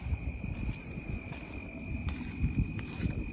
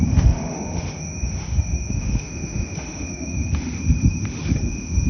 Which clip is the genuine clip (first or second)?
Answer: first